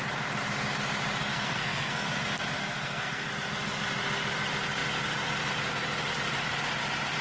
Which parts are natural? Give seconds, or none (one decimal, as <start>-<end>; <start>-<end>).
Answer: 0.0-1.3; 2.2-2.6; 3.3-7.2